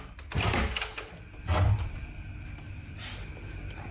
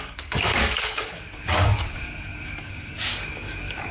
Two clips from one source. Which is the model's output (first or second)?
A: second